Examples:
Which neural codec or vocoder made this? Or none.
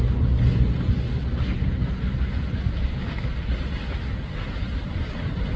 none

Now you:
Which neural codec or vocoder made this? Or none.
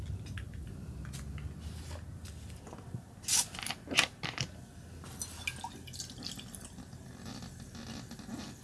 none